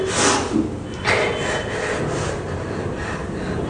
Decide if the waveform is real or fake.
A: real